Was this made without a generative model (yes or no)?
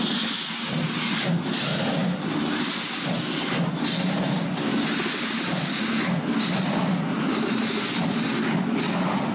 yes